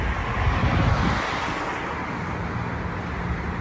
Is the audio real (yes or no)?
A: yes